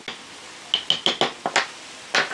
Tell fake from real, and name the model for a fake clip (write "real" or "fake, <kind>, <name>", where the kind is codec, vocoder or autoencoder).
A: real